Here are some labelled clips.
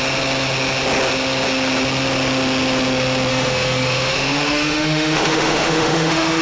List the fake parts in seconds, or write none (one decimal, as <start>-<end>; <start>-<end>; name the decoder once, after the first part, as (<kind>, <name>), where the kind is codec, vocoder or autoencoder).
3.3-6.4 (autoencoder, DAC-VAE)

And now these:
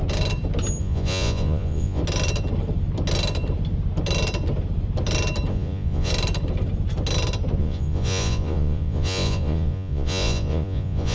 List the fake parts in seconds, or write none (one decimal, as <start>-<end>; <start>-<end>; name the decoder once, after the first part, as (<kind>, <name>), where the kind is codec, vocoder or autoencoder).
0.8-2.0 (vocoder, Vocos); 5.5-6.1; 7.6-11.1

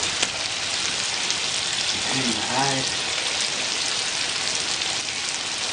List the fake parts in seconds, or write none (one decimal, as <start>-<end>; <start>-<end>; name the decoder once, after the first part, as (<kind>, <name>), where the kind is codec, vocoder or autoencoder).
none

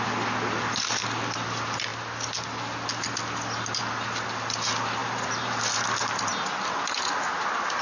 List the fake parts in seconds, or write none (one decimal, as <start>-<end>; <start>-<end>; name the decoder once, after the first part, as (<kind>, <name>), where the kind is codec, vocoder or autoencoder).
5.0-5.6 (vocoder, BigVGAN v2)

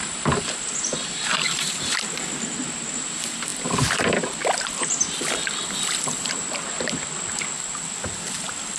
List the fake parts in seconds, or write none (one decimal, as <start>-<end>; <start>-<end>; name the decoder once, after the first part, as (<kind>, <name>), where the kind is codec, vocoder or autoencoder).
1.0-1.7 (vocoder, BigVGAN v2)

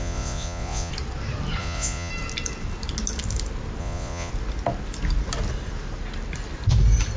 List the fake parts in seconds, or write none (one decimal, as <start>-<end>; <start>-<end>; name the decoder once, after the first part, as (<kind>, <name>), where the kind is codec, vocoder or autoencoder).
0.0-0.9 (vocoder, Vocos); 1.6-2.1; 3.8-4.3

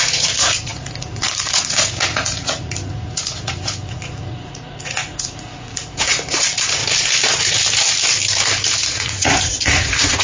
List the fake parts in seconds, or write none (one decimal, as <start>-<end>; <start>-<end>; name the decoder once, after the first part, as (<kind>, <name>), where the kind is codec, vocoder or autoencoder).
0.0-6.8 (vocoder, Vocos); 8.8-10.2

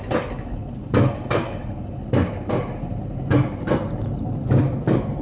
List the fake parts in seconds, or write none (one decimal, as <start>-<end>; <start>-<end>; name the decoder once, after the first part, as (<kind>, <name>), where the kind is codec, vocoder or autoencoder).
none